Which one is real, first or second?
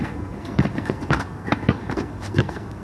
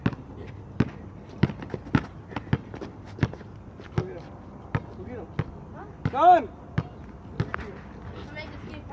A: second